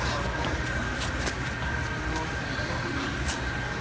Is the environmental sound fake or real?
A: real